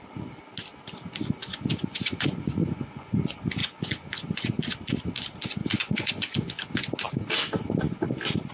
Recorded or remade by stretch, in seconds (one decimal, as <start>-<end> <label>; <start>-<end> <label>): 0.0-1.4 recorded; 1.4-3.2 remade; 3.2-3.6 recorded; 3.6-4.2 remade; 4.2-5.6 recorded; 5.6-6.8 remade; 6.8-8.5 recorded